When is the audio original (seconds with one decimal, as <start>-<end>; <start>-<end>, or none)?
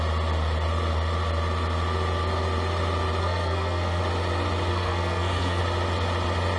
0.0-3.2; 4.0-4.7; 5.6-6.6